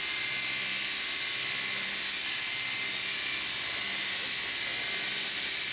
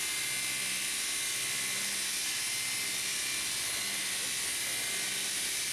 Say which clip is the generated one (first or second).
first